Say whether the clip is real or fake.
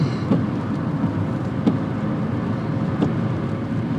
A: real